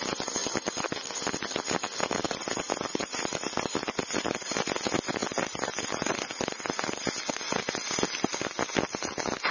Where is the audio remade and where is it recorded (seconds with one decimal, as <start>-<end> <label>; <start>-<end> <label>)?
0.0-9.5 recorded